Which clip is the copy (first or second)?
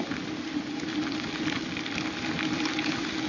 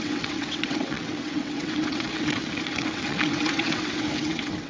second